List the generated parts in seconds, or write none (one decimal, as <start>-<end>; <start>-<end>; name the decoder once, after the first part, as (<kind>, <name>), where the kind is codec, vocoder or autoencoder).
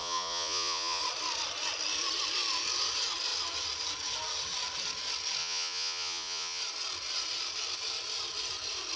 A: 0.0-1.0 (vocoder, Vocos); 5.4-6.6